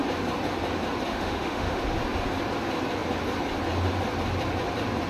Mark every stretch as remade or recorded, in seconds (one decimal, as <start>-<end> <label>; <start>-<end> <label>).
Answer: 0.0-1.1 recorded; 1.1-1.8 remade; 1.8-5.1 recorded

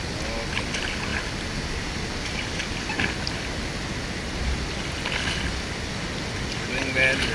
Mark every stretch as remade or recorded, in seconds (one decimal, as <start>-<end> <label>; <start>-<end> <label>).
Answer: 0.0-7.3 recorded